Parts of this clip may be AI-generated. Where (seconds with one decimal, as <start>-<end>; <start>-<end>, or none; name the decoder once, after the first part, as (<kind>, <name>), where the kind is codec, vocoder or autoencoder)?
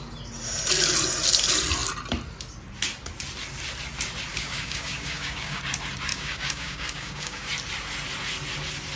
4.3-5.6 (codec, DAC); 6.1-7.5